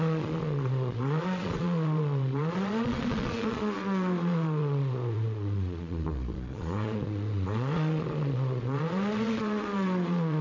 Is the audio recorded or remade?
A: remade